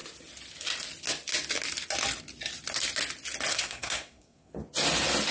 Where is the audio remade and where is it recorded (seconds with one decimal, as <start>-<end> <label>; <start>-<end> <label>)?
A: 0.0-3.5 recorded; 3.5-4.5 remade; 4.5-5.3 recorded